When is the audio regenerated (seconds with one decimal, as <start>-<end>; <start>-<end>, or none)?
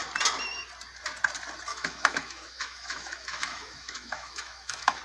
1.7-5.0